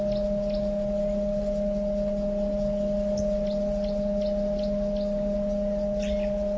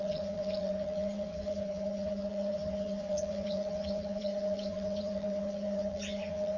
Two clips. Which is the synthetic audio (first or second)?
second